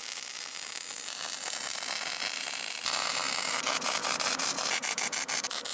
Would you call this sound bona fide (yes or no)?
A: yes